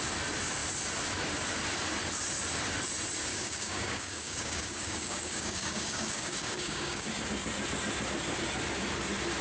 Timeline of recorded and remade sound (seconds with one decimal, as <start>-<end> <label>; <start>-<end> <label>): 0.0-3.3 recorded; 3.3-7.1 remade; 7.1-9.4 recorded